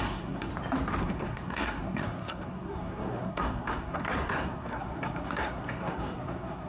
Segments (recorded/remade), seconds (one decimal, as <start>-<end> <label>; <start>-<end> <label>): 0.0-0.5 remade; 0.5-1.0 recorded; 1.0-6.7 remade